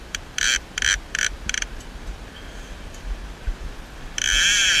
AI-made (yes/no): yes